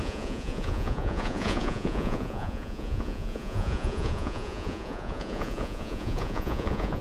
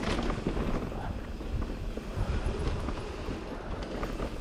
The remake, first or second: first